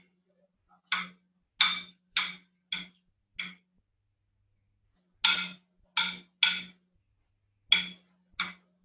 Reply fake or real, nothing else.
real